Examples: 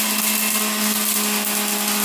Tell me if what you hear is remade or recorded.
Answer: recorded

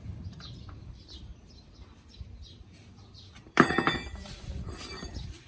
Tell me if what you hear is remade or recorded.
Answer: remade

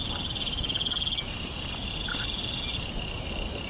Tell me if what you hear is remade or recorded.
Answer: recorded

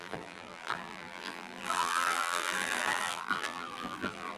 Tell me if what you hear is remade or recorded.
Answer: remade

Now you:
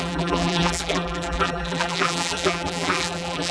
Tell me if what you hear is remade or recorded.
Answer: remade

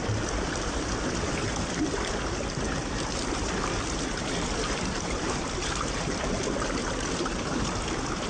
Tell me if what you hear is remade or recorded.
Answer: remade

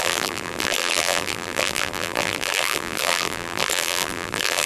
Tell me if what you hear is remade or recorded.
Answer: remade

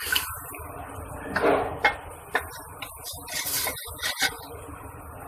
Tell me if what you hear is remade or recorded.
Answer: recorded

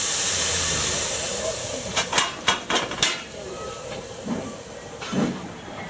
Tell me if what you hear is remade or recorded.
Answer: remade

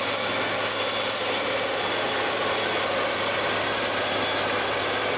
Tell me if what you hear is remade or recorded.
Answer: recorded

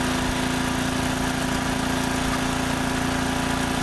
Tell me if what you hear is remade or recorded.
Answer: recorded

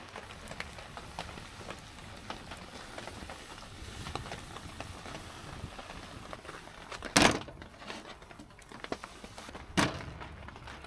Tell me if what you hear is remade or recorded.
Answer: recorded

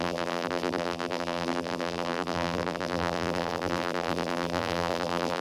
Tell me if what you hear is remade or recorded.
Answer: remade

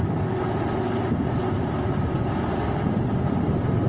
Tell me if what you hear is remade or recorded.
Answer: remade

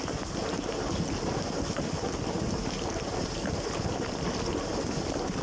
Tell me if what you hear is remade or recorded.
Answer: remade